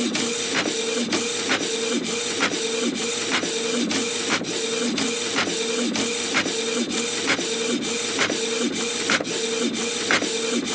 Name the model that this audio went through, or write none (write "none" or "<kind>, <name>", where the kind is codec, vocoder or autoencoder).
none